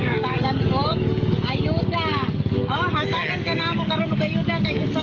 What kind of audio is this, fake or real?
fake